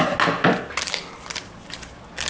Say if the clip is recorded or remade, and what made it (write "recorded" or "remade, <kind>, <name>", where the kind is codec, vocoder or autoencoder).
recorded